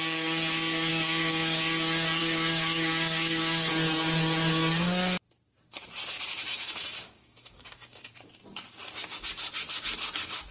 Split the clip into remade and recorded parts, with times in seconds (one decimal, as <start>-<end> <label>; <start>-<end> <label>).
0.0-0.9 recorded; 0.9-1.6 remade; 1.6-2.2 recorded; 2.2-3.7 remade; 3.7-6.5 recorded; 6.5-8.1 remade; 8.1-10.5 recorded